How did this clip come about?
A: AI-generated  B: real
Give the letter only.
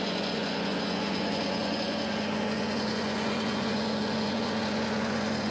A